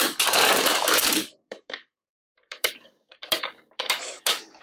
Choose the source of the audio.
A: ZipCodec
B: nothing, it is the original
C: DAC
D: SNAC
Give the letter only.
C